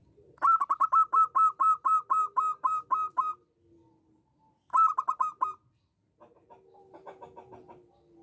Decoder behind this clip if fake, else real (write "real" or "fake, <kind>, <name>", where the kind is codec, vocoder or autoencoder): real